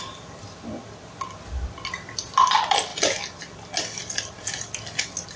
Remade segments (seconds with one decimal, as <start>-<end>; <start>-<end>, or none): none